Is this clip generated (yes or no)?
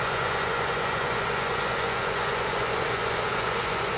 yes